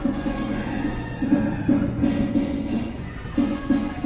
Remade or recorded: remade